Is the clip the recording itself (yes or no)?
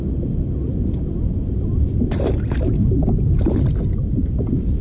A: yes